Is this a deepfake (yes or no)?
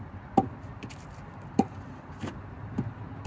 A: yes